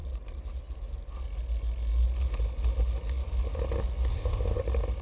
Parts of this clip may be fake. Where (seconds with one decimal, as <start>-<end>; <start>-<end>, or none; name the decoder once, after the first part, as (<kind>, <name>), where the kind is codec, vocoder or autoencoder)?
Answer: 4.1-4.6 (codec, ZipCodec)